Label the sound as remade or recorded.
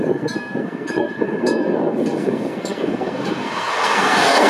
remade